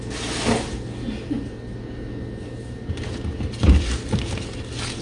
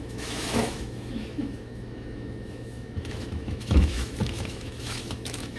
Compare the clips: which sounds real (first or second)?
first